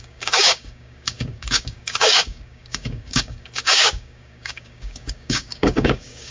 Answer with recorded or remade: remade